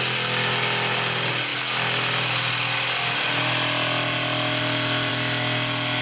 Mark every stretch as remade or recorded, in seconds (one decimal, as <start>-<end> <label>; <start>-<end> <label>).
0.0-6.0 recorded